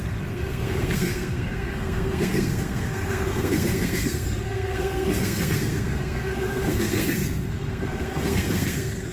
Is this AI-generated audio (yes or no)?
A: yes